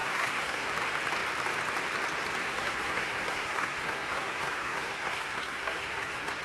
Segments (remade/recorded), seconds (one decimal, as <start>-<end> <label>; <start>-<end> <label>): 0.0-0.7 remade; 0.7-2.4 recorded; 2.4-6.4 remade